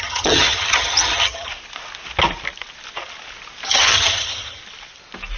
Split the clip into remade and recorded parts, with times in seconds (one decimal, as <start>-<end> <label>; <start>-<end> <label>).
0.0-1.5 remade; 1.5-3.7 recorded; 3.7-4.6 remade; 4.6-5.4 recorded